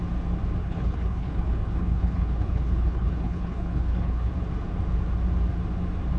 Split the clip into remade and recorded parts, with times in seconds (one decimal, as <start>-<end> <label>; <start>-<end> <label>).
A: 0.0-0.6 recorded; 0.6-4.3 remade; 4.3-6.2 recorded